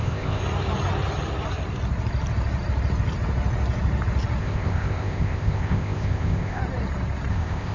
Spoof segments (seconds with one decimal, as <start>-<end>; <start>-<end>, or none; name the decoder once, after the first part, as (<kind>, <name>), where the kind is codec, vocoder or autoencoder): 0.0-0.4 (codec, ZipCodec); 4.4-6.6; 7.3-7.7